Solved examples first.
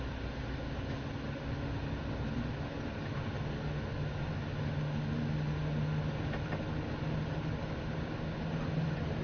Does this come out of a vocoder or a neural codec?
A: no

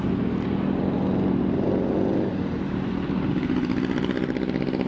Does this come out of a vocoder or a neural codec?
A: no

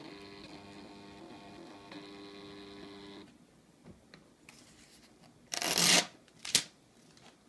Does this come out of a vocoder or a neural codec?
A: no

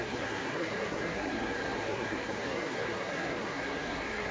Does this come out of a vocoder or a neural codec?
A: yes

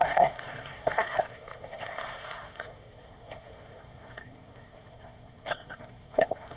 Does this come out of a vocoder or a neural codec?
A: yes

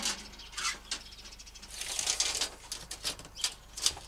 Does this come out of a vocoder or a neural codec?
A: no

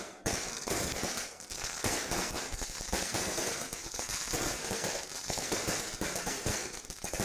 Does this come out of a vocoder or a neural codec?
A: yes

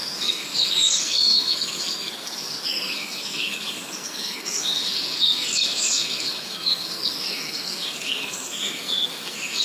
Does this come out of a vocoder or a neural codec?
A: yes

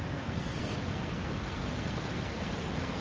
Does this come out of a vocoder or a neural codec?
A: yes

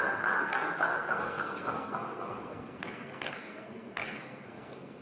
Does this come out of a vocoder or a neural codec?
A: yes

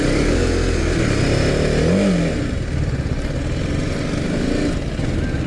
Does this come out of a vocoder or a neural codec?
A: no